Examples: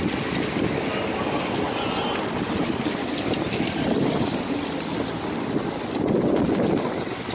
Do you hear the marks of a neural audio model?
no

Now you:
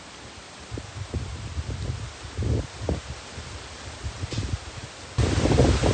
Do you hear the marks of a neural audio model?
no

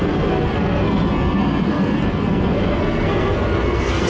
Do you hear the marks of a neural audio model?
yes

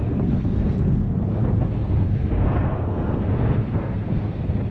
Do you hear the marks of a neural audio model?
yes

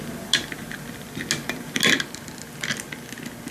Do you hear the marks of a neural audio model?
no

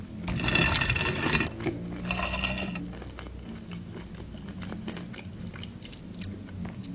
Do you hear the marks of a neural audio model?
no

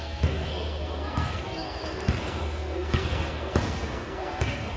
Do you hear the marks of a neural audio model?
yes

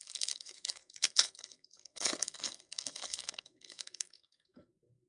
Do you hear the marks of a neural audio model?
yes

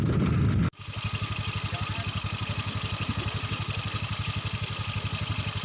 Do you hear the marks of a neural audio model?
no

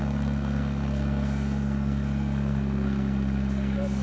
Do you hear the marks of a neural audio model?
yes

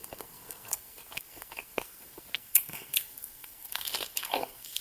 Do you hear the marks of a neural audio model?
yes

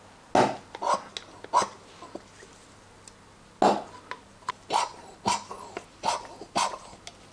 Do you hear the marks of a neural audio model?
no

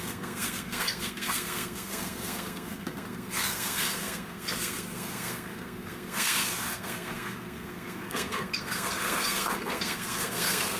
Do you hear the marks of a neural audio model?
yes